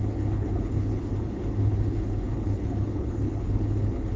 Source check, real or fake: fake